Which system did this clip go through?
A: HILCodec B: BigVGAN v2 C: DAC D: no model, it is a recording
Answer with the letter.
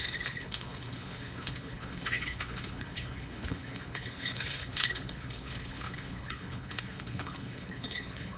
A